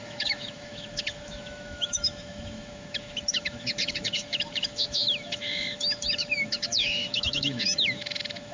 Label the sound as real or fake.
fake